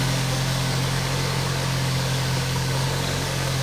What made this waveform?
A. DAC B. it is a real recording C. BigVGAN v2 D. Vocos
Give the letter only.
A